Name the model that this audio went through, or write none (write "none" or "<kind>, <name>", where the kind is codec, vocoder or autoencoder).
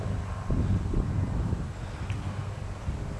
none